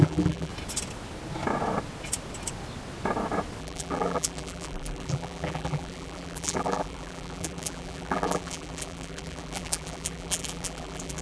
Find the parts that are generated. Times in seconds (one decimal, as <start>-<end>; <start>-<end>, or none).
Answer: 0.0-0.5; 3.6-11.2